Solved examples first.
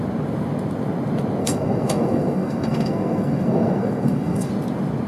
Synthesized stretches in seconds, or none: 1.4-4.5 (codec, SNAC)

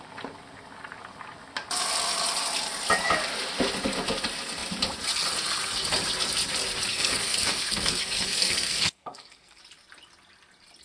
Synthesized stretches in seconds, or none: 6.9-9.6 (codec, SNAC)

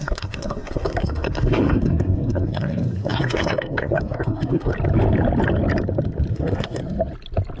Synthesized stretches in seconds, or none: 0.0-4.7 (codec, SNAC); 6.3-6.8

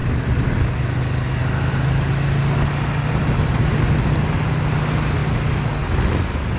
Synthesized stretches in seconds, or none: none